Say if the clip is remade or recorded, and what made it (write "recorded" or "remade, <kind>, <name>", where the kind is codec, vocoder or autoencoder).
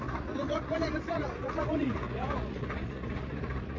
remade, vocoder, Vocos